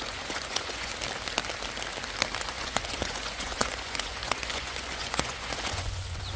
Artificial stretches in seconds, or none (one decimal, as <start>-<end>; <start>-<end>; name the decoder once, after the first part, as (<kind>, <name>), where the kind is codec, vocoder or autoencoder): 0.0-0.9 (vocoder, Vocos); 2.4-6.4